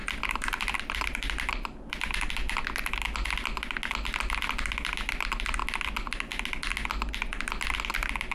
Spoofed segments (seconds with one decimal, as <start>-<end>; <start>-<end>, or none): none